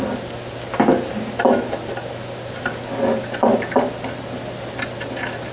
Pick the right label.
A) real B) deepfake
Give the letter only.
A